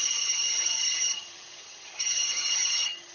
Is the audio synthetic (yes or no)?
yes